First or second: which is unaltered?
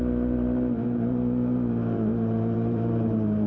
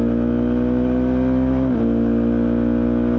second